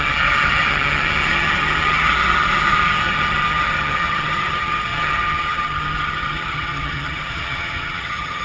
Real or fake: fake